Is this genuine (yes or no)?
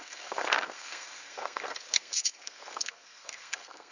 no